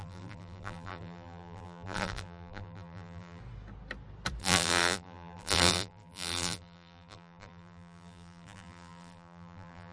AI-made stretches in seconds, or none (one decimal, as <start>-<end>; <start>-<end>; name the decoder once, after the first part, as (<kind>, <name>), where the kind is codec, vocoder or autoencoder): 0.0-3.4 (vocoder, BigVGAN v2); 4.4-9.9